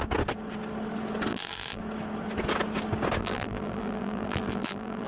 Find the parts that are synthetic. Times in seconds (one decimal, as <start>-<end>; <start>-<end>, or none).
1.3-1.8; 3.2-5.1